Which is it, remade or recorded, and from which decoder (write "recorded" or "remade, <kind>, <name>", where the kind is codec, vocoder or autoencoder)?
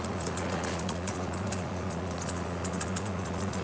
remade, vocoder, Vocos